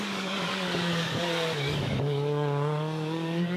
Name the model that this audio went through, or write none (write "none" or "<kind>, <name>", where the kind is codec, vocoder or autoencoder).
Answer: codec, DAC